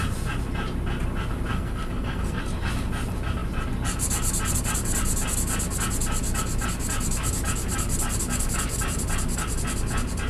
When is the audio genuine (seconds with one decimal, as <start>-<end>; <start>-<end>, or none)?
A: 0.0-1.5; 2.4-10.3

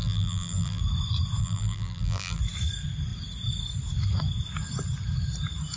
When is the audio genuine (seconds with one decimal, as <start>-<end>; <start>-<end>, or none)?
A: 0.8-1.4; 2.4-5.8

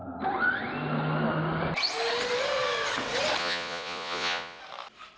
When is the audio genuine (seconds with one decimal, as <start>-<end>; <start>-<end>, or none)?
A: 0.0-3.4; 4.6-5.2

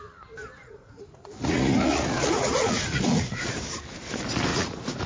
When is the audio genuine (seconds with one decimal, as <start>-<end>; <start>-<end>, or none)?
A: 0.0-0.6; 3.5-4.5